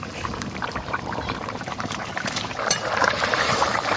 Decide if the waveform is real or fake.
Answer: fake